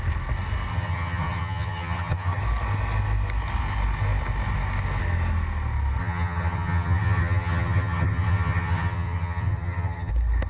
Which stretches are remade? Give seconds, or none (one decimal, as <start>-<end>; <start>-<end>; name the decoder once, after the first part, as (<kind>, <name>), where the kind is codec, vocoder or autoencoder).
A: 0.7-2.4 (vocoder, HiFi-GAN); 6.0-10.1

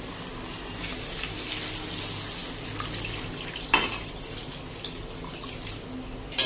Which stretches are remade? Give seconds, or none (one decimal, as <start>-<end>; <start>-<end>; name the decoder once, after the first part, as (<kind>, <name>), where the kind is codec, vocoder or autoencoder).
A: none

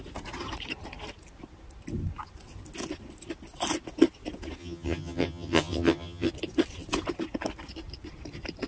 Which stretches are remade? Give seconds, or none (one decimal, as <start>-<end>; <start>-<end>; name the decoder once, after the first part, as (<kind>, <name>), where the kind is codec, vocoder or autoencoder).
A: 4.6-6.3 (vocoder, HiFi-GAN)

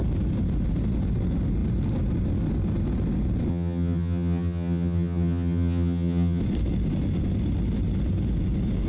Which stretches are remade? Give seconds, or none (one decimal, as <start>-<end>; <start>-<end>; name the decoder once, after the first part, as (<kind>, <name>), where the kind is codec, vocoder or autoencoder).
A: 3.5-6.4 (vocoder, HiFi-GAN)

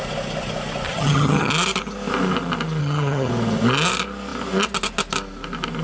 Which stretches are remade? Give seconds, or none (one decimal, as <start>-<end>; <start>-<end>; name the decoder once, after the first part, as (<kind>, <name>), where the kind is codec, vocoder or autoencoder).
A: 0.9-1.5 (vocoder, HiFi-GAN); 2.8-3.3